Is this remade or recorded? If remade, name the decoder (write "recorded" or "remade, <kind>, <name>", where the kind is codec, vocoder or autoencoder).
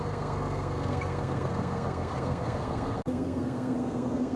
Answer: remade, codec, SNAC